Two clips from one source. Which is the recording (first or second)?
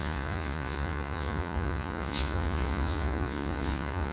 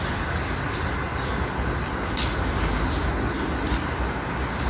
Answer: second